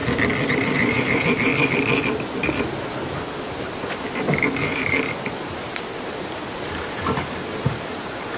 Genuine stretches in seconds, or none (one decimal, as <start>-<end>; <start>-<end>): 0.0-0.5; 1.5-4.3